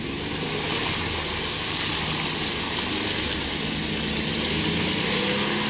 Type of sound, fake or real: real